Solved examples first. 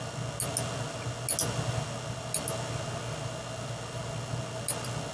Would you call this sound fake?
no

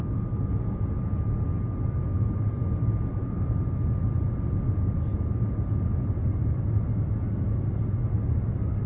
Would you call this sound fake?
no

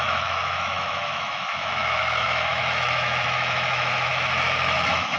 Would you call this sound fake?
yes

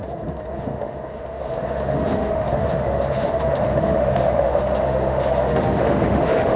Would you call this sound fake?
yes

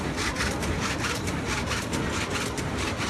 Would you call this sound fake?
no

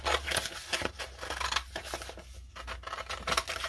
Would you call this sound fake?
no